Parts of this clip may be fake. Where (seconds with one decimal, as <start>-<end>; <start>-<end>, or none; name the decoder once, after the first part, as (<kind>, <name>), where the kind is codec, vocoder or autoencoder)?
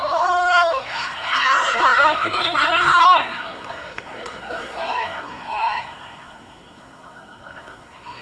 0.0-8.2 (codec, SNAC)